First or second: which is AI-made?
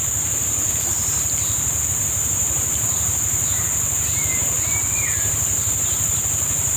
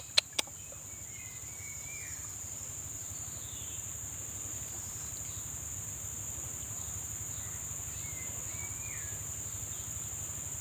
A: first